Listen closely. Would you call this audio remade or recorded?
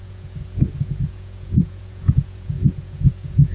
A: remade